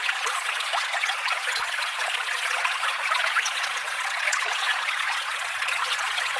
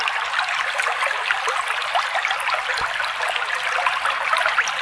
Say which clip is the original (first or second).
second